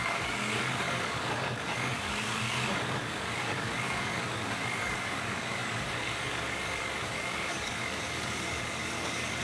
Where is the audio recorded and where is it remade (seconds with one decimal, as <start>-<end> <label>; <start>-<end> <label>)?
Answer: 0.0-9.4 remade